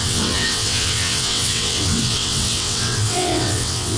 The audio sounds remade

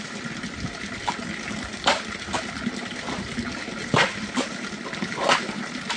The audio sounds recorded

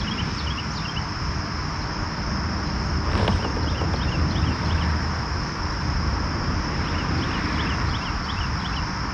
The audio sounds recorded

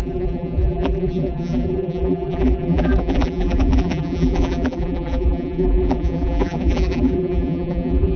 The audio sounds remade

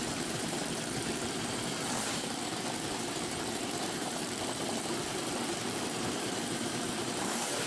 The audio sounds remade